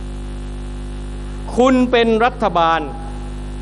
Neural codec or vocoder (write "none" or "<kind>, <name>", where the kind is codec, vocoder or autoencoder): none